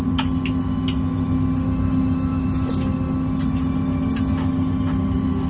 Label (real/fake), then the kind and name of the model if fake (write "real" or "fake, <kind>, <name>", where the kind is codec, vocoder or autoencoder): real